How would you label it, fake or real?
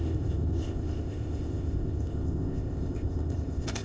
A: fake